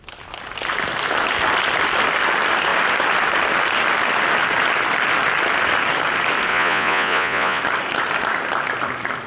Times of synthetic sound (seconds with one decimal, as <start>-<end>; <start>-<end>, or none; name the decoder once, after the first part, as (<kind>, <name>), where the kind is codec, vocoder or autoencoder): 6.5-7.6 (vocoder, Vocos)